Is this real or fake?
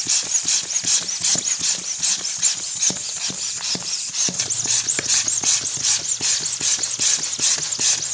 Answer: real